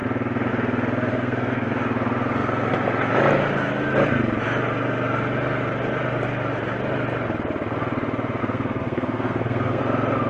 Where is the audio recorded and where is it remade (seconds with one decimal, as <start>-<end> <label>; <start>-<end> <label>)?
0.0-1.1 recorded; 1.1-1.7 remade; 1.7-8.4 recorded; 8.4-9.8 remade; 9.8-10.3 recorded